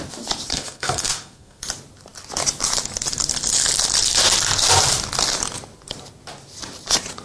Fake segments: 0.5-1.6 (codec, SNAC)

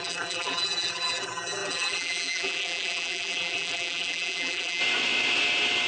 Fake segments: 0.0-4.8 (vocoder, BigVGAN v2)

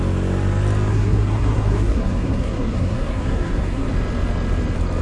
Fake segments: 0.9-3.9 (codec, SNAC)

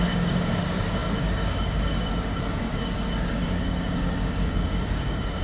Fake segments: 0.0-5.4 (codec, DAC)

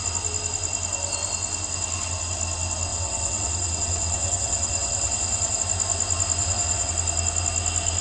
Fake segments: 2.9-5.6 (vocoder, WaveNeXt); 6.4-6.9